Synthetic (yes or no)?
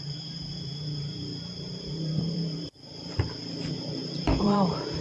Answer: yes